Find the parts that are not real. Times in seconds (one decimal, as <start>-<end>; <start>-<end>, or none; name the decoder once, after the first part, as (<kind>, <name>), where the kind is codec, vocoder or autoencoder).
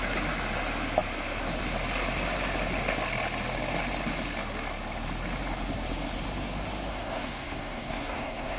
6.9-8.6 (codec, SNAC)